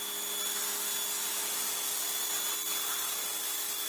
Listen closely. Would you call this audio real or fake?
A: real